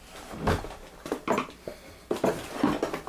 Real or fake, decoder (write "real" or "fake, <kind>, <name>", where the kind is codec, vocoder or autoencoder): real